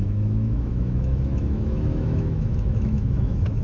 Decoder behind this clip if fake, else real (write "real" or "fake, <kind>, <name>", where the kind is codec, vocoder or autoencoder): fake, autoencoder, DAC-VAE